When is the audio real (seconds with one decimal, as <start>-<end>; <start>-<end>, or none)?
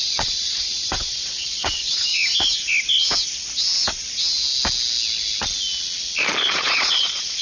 2.1-6.5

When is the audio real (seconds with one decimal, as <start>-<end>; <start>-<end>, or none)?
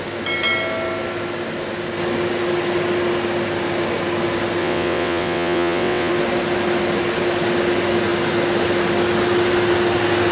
0.0-4.6; 6.1-10.3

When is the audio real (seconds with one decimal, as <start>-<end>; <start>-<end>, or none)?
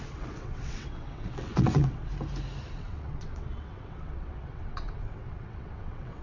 2.1-2.7